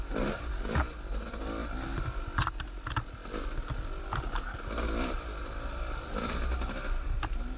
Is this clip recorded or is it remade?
recorded